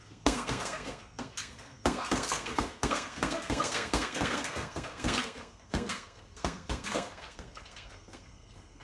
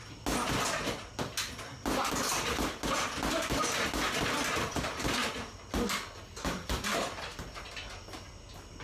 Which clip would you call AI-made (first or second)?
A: first